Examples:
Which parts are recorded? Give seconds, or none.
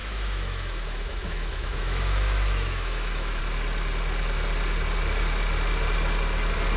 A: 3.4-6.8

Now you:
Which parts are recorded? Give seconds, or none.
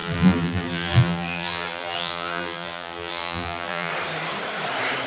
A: 3.9-5.1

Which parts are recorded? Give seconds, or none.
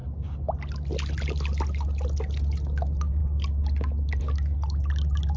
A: 0.0-5.4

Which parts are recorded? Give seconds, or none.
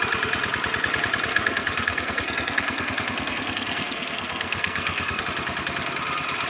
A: 0.0-1.3; 5.2-6.5